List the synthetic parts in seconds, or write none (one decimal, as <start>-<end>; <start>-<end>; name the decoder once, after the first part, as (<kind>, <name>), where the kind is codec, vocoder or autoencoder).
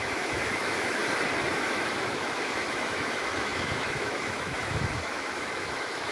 0.0-1.0 (autoencoder, DAC-VAE); 1.5-6.1